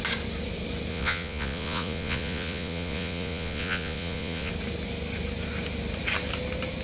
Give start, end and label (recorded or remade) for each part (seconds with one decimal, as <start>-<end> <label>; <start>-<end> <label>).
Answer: 0.0-0.9 recorded; 0.9-4.5 remade; 4.5-6.8 recorded